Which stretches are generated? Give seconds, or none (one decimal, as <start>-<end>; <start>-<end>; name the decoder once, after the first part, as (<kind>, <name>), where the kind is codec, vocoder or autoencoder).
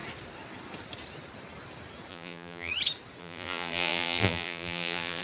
2.1-2.7 (vocoder, BigVGAN v2); 3.2-5.2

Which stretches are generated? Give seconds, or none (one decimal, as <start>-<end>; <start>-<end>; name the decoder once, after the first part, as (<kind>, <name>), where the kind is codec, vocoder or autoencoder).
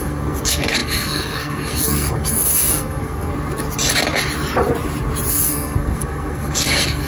0.0-3.3 (codec, SNAC); 5.3-7.1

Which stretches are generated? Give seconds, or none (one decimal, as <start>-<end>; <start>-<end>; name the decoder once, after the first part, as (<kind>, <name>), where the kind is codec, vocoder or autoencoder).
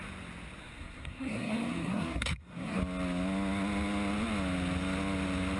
0.6-2.8 (codec, SNAC)